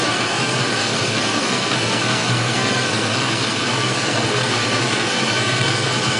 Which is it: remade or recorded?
remade